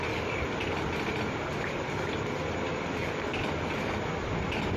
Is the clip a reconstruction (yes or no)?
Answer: no